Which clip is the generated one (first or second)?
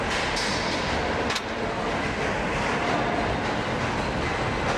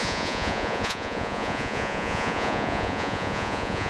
second